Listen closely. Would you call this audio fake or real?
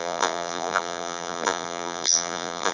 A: fake